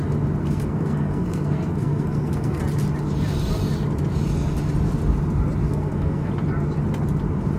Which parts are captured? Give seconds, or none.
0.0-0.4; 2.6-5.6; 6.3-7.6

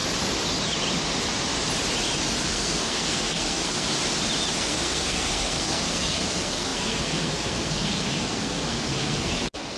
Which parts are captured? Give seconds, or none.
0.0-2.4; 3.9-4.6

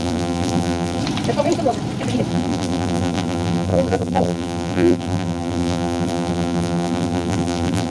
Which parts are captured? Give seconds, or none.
1.0-2.3